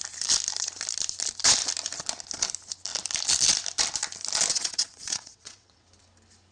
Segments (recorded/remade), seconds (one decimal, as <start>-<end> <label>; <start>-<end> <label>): 0.0-4.5 recorded; 4.5-5.9 remade; 5.9-6.5 recorded